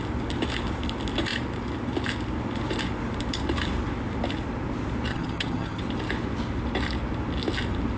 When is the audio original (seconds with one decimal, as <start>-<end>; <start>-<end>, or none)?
0.0-5.1; 5.8-8.0